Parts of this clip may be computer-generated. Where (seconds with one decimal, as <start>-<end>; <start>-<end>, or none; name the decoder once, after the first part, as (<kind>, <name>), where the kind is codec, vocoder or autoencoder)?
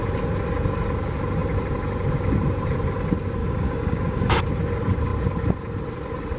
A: 3.4-4.4 (codec, DAC)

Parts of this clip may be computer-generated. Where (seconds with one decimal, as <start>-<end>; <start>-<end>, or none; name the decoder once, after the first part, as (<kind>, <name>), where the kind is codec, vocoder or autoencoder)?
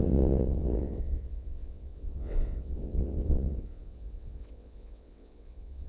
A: 0.0-5.9 (vocoder, WaveNeXt)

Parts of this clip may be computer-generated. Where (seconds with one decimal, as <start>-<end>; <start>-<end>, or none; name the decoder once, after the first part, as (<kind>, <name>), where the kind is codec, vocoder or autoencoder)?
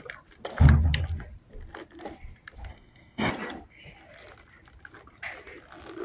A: 2.7-3.3 (codec, SNAC)